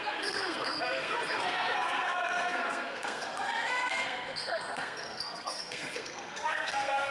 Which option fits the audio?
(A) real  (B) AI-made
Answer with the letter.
B